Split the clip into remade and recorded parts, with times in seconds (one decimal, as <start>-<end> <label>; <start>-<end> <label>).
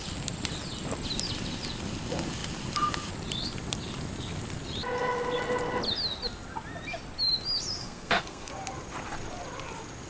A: 0.0-7.8 recorded; 7.8-8.5 remade; 8.5-10.1 recorded